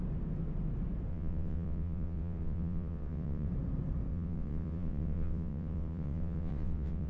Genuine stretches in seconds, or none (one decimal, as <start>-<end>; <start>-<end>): 0.0-1.1; 3.5-4.1